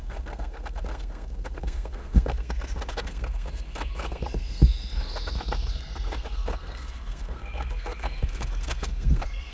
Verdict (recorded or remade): remade